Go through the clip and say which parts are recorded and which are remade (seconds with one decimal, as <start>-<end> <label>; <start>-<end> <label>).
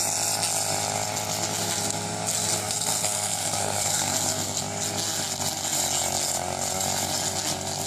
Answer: 0.0-2.6 recorded; 2.6-4.6 remade; 4.6-7.9 recorded